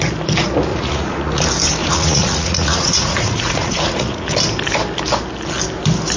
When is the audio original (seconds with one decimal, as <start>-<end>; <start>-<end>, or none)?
0.0-0.7; 1.4-1.8; 4.3-6.2